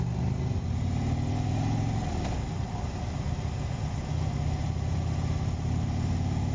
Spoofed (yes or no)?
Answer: no